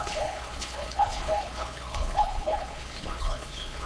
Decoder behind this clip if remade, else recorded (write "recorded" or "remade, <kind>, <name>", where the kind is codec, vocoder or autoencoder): remade, codec, HILCodec